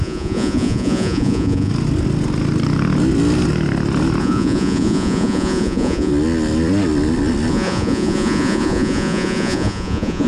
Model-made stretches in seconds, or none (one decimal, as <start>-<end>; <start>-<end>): 0.0-1.7; 4.2-6.1; 7.5-10.3